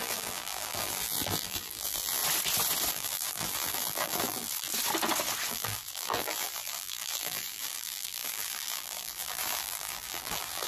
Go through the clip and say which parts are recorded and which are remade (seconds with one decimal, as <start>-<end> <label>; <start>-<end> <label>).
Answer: 0.0-2.2 remade; 2.2-2.9 recorded; 2.9-4.7 remade; 4.7-5.5 recorded; 5.5-10.7 remade